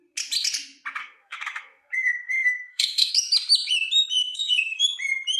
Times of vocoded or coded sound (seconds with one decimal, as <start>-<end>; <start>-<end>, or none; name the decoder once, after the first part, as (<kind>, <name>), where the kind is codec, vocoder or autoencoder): 1.0-3.1 (codec, SNAC); 4.2-4.8